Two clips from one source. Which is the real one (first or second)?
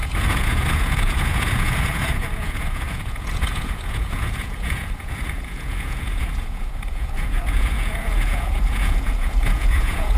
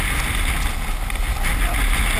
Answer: second